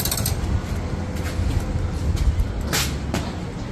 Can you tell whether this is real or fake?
real